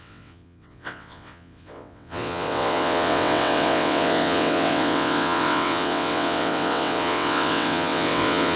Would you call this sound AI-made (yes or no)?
yes